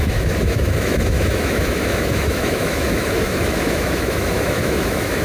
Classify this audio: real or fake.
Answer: fake